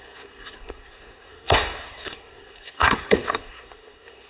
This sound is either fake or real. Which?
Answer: fake